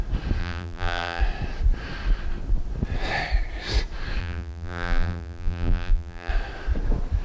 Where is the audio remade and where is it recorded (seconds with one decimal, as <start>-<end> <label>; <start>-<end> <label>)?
0.0-0.4 recorded; 0.4-1.2 remade; 1.2-4.2 recorded; 4.2-6.3 remade; 6.3-7.2 recorded